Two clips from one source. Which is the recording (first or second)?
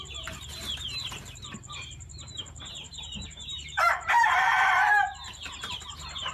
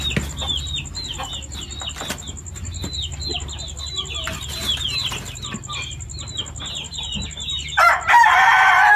second